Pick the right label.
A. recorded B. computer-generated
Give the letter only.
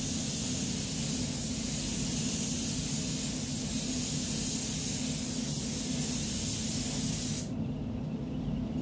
A